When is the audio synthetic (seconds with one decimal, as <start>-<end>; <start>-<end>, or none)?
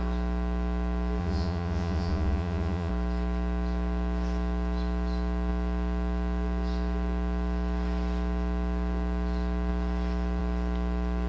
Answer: 1.2-2.9